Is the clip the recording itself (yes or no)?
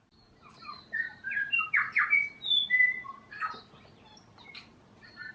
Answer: yes